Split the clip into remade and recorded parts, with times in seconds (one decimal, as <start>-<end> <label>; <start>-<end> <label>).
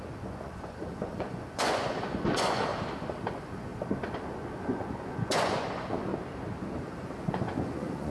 0.0-2.7 remade; 2.7-3.3 recorded; 3.3-3.7 remade; 3.7-4.6 recorded; 4.6-6.1 remade; 6.1-7.2 recorded; 7.2-8.1 remade